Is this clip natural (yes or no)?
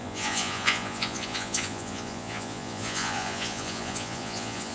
no